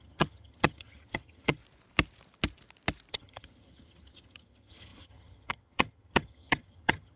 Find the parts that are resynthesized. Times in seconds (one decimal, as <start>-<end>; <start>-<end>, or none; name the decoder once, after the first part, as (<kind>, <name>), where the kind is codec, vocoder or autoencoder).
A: 0.0-1.6 (vocoder, HiFi-GAN); 3.1-7.2